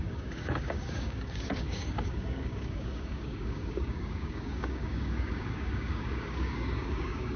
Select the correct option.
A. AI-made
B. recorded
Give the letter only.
A